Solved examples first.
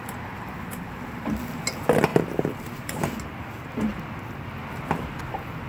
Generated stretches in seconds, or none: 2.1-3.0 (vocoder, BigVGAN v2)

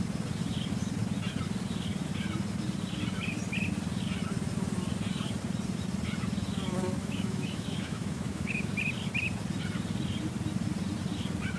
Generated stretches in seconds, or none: 7.0-8.7 (autoencoder, DAC-VAE)